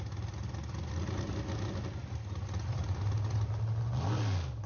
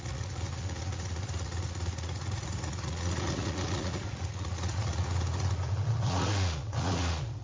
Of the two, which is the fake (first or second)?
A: second